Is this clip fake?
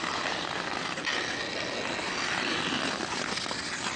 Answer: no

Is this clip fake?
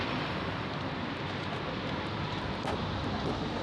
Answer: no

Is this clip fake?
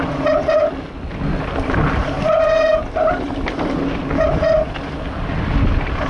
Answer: no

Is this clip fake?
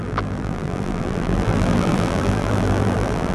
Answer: yes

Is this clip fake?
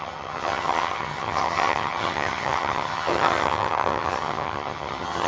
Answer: yes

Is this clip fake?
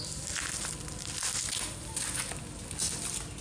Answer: no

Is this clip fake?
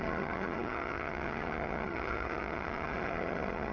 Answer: yes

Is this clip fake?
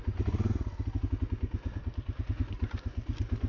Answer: no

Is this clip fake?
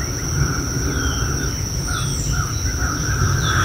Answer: no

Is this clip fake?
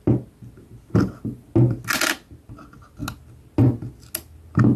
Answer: no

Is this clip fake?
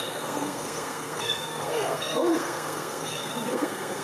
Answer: yes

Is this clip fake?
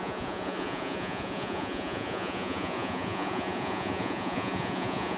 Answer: yes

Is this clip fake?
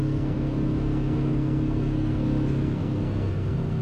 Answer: yes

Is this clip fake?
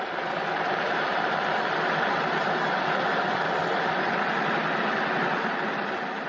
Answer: no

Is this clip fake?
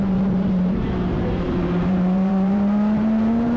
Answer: yes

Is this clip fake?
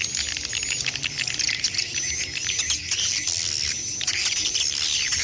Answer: no